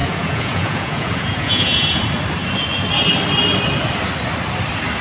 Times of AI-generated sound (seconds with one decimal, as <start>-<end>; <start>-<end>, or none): 0.0-2.0